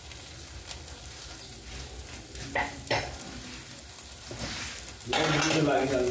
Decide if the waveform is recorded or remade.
recorded